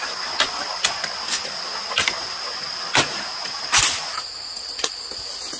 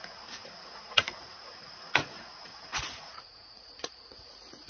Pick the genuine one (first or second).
first